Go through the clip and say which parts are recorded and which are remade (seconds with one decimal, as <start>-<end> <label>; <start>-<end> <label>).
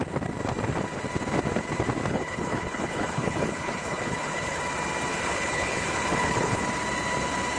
0.0-2.1 recorded; 2.1-4.6 remade; 4.6-5.1 recorded; 5.1-6.6 remade; 6.6-7.6 recorded